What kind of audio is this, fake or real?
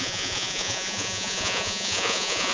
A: fake